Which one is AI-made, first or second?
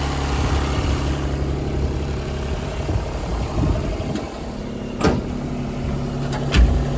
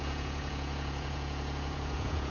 second